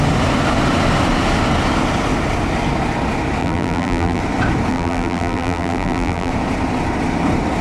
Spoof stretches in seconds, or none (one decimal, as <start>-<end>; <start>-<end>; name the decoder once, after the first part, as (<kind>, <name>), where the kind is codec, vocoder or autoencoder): 3.4-4.2 (vocoder, BigVGAN v2); 4.7-6.3